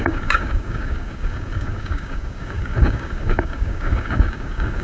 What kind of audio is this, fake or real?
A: fake